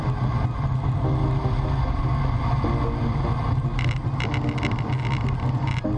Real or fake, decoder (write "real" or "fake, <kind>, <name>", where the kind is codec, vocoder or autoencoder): real